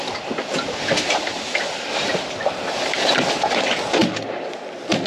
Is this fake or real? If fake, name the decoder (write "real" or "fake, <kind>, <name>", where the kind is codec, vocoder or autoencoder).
real